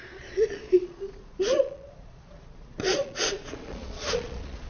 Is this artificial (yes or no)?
yes